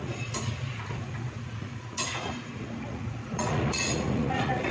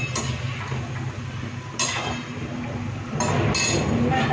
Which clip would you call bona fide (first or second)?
second